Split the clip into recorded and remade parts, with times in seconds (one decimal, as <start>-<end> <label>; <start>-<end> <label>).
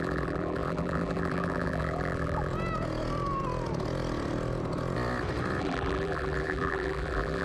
0.0-2.5 remade; 2.5-5.6 recorded; 5.6-7.4 remade